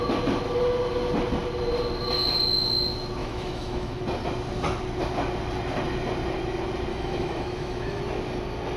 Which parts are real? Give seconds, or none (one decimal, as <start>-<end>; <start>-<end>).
0.0-3.2; 4.0-6.9; 8.0-8.8